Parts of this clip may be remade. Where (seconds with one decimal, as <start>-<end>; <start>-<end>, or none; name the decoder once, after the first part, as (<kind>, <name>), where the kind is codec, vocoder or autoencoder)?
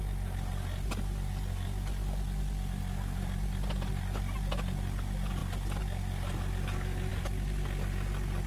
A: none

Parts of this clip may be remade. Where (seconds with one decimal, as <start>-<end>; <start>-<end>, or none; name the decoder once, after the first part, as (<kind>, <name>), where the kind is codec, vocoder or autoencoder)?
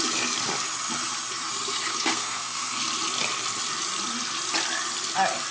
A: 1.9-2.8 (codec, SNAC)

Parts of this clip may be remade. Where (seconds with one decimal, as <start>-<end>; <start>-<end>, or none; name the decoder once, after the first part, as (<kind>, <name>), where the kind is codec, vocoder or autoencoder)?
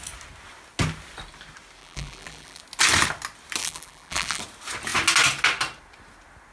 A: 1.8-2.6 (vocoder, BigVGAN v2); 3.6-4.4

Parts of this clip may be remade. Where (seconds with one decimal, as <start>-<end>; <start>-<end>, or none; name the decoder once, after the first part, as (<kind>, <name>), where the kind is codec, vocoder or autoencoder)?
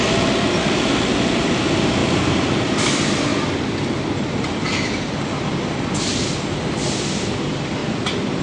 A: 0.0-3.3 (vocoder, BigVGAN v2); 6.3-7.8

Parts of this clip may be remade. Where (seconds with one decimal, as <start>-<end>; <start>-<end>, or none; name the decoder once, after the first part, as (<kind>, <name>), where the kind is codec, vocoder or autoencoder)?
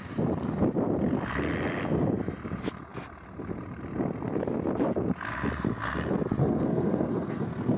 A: 6.4-7.8 (codec, SNAC)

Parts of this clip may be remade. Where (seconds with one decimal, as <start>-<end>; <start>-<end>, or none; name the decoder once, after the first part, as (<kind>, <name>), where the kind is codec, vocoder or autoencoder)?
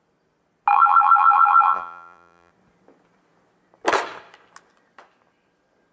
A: 0.7-2.5 (vocoder, BigVGAN v2)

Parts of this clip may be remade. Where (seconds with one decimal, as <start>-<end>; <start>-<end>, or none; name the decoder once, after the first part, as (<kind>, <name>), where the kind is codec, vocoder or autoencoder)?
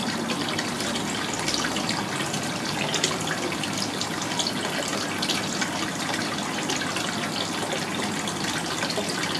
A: none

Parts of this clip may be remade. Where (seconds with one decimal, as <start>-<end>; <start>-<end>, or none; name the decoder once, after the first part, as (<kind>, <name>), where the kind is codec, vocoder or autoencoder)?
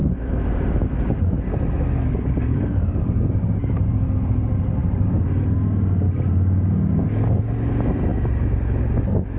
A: 0.0-1.4 (vocoder, BigVGAN v2); 8.1-8.8